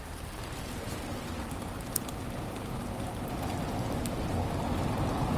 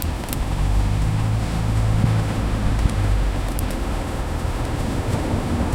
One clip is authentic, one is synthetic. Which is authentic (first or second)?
first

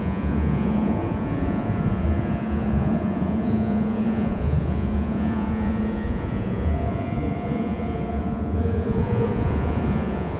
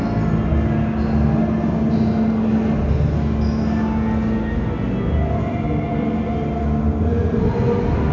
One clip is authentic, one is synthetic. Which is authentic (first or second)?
second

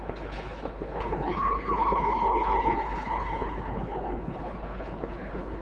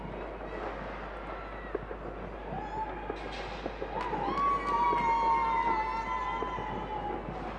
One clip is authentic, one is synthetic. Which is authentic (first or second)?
second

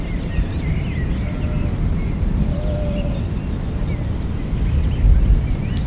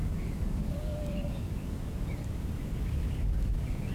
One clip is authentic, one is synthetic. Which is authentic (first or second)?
first